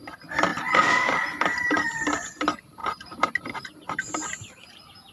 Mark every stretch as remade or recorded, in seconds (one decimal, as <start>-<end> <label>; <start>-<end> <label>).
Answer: 0.0-5.1 recorded